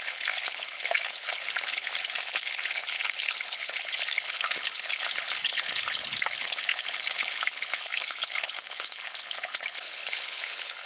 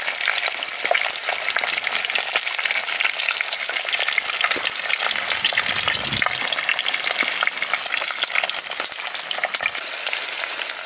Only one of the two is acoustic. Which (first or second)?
second